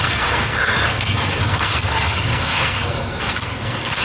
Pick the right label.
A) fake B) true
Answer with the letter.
A